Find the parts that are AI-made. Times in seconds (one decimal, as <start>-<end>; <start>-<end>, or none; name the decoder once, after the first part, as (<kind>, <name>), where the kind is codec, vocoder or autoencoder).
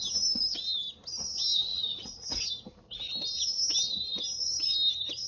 1.7-2.4 (vocoder, Vocos)